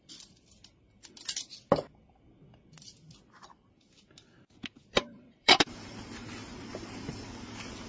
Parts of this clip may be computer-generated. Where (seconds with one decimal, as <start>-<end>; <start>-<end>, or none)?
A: 5.4-6.0

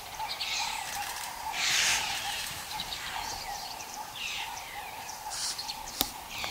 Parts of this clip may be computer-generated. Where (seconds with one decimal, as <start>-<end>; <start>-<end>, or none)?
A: 1.9-5.8

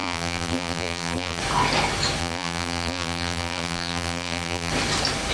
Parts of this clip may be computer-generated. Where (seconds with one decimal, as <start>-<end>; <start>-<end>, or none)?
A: 0.0-1.4; 2.2-4.7